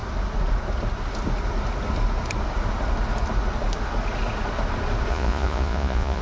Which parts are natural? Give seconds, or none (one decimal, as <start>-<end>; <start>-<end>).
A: 0.0-5.1